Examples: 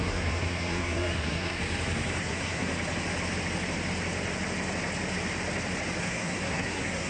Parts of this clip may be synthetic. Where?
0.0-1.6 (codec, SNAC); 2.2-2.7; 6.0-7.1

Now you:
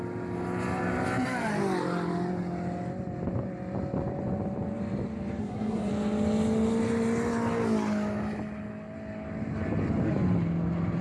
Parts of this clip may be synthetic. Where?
5.4-5.9 (codec, SNAC)

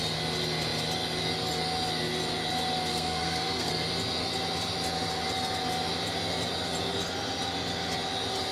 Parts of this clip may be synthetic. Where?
2.9-3.7 (codec, SNAC)

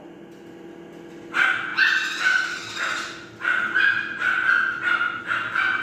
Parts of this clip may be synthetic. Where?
none